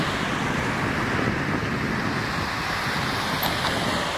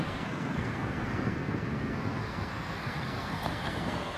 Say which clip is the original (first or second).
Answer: first